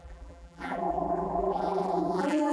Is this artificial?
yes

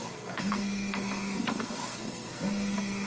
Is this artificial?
yes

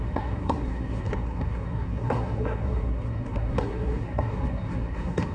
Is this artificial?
yes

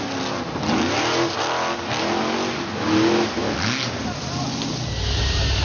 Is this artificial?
no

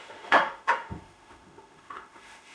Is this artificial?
yes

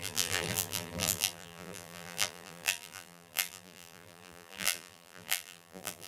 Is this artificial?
yes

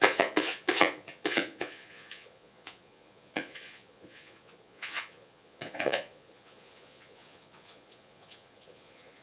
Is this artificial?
yes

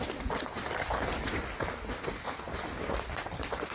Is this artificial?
no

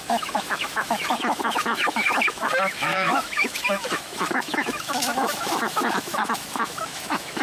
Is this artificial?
yes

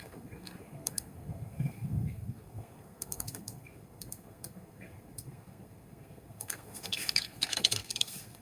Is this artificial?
yes